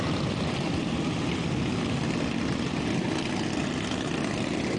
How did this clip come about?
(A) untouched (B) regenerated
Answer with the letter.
A